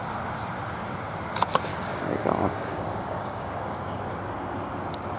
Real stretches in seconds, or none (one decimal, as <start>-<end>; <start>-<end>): 0.0-1.7; 4.0-5.2